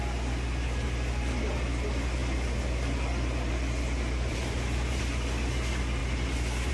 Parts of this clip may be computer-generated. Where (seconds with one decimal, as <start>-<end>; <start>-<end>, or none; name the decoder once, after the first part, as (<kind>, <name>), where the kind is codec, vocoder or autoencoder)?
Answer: 4.3-5.0 (vocoder, BigVGAN v2)